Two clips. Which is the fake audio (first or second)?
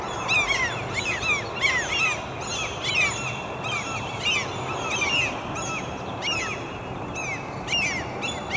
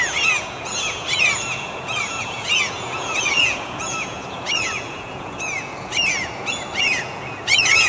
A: second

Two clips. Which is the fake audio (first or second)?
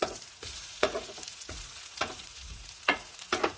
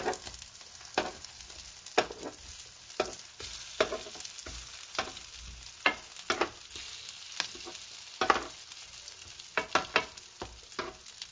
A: first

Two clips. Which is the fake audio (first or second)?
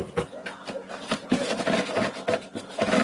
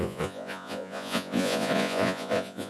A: second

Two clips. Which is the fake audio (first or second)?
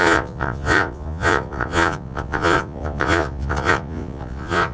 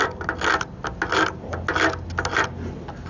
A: first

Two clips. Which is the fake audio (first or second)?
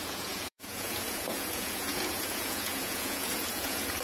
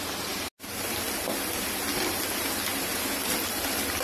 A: first